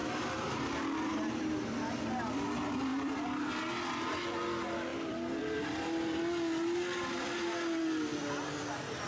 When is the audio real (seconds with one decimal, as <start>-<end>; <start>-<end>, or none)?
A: 0.8-2.9; 3.5-4.9; 5.4-9.1